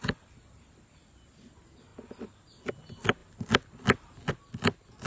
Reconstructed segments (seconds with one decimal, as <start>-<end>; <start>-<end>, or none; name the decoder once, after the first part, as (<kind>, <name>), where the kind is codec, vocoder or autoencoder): none